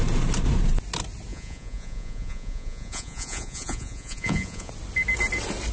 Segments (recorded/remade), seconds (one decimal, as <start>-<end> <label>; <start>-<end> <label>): 0.0-1.3 recorded; 1.3-4.7 remade; 4.7-5.7 recorded